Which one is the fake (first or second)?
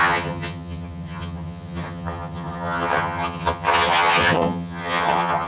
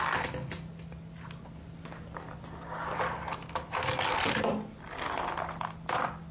first